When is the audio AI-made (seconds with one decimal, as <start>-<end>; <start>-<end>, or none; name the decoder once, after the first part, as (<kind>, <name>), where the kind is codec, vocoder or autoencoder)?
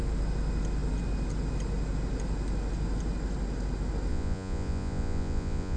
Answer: 4.1-5.8 (vocoder, Vocos)